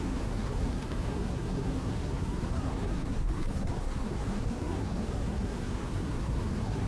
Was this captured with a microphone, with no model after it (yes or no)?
no